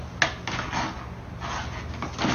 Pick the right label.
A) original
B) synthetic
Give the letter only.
A